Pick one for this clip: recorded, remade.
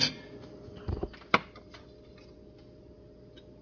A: recorded